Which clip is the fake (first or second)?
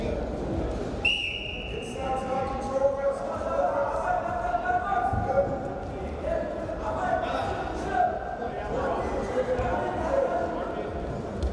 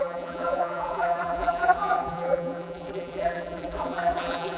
second